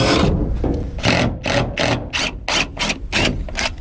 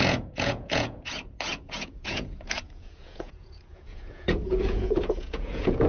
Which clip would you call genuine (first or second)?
first